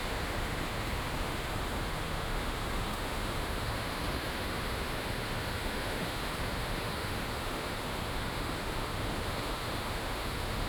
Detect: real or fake fake